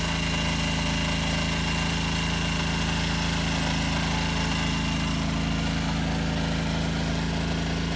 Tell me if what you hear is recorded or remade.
recorded